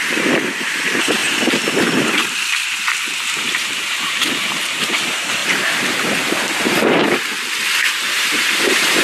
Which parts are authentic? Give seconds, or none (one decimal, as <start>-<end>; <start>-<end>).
1.2-1.7; 2.2-3.9; 7.3-7.9